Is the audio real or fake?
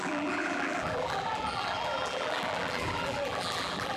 fake